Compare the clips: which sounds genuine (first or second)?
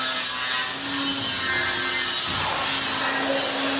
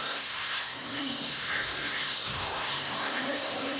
first